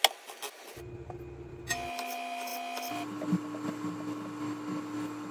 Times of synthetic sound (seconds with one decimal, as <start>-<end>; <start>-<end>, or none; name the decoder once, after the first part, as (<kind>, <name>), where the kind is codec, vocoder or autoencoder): none